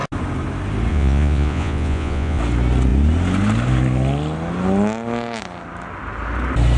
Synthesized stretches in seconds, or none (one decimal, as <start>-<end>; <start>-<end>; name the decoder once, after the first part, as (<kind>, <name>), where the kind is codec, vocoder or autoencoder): 0.9-2.4 (vocoder, Vocos)